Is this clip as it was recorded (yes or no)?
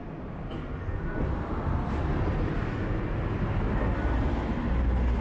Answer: yes